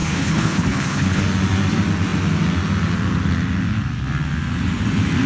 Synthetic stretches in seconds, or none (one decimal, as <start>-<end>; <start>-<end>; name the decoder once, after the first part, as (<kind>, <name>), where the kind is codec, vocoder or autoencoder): 0.0-1.2 (codec, HILCodec)